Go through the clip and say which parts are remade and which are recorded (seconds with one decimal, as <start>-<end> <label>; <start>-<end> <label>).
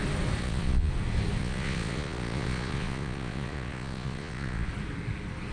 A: 0.0-0.4 recorded; 0.4-0.9 remade; 0.9-1.4 recorded; 1.4-4.7 remade; 4.7-5.5 recorded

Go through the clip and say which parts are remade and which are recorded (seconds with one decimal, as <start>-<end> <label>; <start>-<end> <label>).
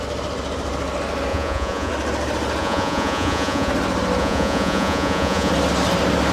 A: 0.0-1.3 recorded; 1.3-1.9 remade; 1.9-2.6 recorded; 2.6-3.7 remade; 3.7-4.2 recorded; 4.2-5.5 remade; 5.5-6.3 recorded